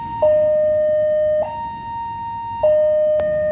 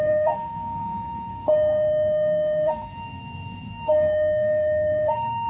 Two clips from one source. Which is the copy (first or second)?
second